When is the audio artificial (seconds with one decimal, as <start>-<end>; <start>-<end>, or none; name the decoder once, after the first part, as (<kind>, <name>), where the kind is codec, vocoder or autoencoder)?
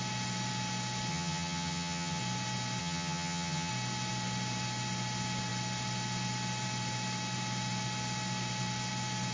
1.1-2.2 (vocoder, HiFi-GAN); 2.8-3.7